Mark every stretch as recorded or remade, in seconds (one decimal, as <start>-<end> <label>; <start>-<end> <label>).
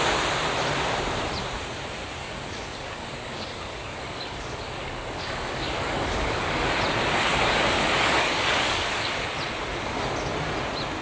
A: 0.0-2.2 recorded; 2.2-6.7 remade; 6.7-7.3 recorded; 7.3-9.3 remade; 9.3-11.0 recorded